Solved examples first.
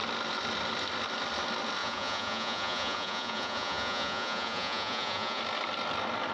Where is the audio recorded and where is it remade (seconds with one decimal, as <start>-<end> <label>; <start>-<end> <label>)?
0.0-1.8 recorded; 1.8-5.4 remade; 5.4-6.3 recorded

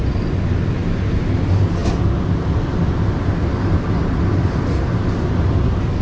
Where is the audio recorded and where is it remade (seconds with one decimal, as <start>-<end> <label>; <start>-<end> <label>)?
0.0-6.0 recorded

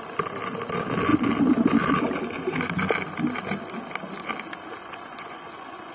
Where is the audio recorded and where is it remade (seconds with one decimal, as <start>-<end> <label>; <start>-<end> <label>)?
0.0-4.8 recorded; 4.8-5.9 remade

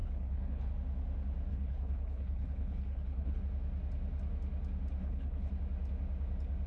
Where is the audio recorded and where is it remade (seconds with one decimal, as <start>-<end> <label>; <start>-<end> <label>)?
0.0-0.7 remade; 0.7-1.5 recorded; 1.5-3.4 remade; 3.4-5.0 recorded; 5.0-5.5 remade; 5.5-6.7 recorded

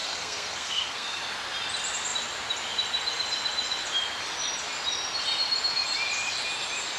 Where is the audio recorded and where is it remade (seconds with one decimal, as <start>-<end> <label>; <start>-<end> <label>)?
0.0-1.2 remade; 1.2-7.0 recorded

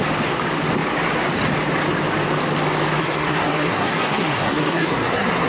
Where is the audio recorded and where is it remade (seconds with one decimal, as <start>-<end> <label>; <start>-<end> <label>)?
0.0-3.0 recorded; 3.0-5.5 remade

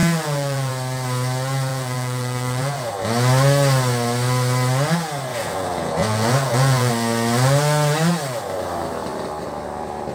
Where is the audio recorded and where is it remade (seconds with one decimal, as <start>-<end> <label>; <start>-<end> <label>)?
0.0-0.7 remade; 0.7-1.7 recorded; 1.7-2.9 remade; 2.9-5.3 recorded; 5.3-6.9 remade; 6.9-10.1 recorded